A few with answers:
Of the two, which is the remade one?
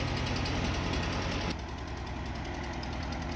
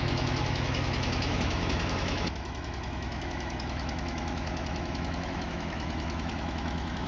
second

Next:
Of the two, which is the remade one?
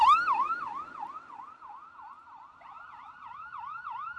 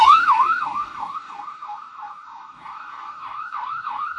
second